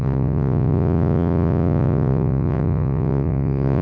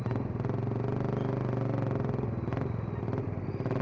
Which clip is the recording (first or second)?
second